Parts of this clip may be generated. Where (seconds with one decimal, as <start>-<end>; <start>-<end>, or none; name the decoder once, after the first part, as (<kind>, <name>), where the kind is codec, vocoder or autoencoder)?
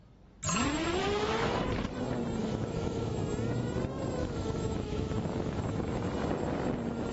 1.0-1.6 (autoencoder, DAC-VAE); 2.4-3.1; 4.2-5.6